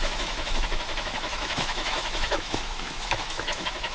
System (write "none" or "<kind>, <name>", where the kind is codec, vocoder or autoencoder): autoencoder, DAC-VAE